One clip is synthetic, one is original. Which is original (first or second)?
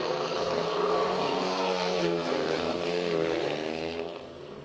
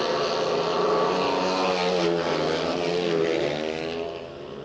second